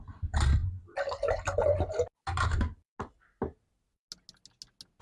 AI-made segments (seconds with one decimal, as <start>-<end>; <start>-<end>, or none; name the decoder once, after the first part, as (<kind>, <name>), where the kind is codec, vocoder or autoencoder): none